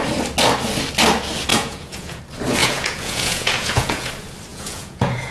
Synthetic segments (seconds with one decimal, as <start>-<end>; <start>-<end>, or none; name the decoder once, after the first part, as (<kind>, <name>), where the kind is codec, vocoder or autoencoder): 1.5-2.2 (vocoder, Vocos); 2.6-4.1; 4.5-5.3